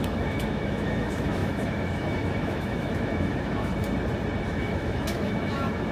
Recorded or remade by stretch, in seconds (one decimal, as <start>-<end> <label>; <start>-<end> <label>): 0.0-3.7 remade; 3.7-4.5 recorded; 4.5-5.9 remade